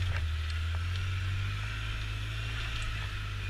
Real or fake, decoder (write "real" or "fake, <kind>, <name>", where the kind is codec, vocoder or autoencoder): real